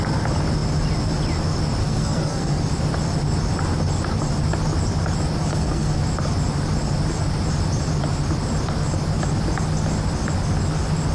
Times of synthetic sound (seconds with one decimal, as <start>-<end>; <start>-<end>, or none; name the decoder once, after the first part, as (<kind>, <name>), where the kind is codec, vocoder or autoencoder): 1.8-2.6 (codec, SNAC); 5.5-6.0